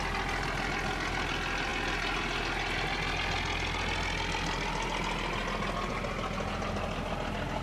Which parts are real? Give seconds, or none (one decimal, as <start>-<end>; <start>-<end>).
0.0-7.6